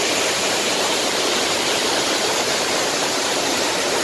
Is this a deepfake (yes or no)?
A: yes